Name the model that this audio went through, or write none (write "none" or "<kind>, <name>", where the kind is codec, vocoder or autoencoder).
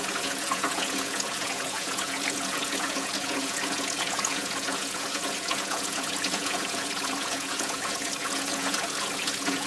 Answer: vocoder, Vocos